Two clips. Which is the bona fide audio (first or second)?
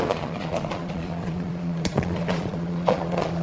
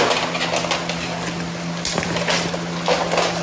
second